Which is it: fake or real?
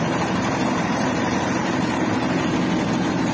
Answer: fake